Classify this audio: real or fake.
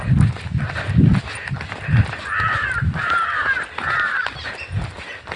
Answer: real